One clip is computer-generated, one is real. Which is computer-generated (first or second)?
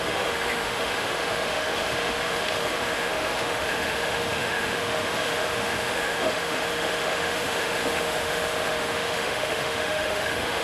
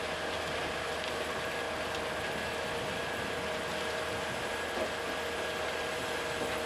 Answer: first